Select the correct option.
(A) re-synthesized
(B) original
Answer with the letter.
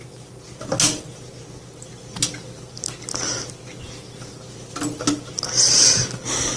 B